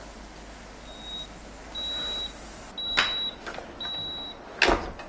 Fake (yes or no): no